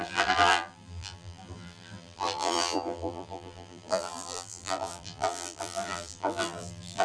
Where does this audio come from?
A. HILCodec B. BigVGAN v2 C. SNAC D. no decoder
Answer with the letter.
B